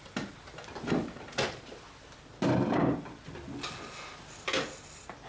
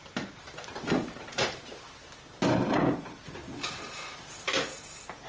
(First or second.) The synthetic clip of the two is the second